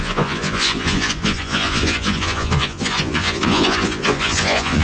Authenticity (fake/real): fake